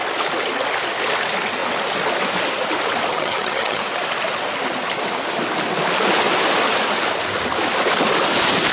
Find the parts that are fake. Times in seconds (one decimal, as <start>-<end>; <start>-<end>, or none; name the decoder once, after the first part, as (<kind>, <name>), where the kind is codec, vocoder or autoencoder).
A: 3.1-3.8 (vocoder, HiFi-GAN)